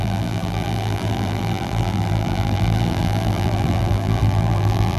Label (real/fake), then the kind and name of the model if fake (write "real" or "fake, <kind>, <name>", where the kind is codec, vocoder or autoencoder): fake, vocoder, BigVGAN v2